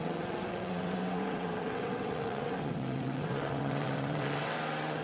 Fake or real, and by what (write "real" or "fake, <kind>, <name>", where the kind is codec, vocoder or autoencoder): fake, vocoder, WaveNeXt